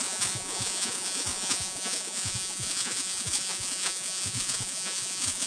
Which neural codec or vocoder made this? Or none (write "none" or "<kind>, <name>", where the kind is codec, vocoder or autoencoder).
vocoder, Vocos